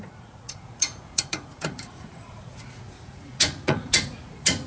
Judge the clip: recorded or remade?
remade